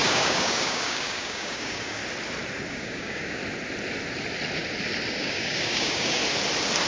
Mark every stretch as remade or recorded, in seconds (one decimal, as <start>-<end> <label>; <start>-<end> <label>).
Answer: 0.0-2.0 remade; 2.0-2.7 recorded; 2.7-3.4 remade; 3.4-5.1 recorded; 5.1-6.2 remade; 6.2-6.9 recorded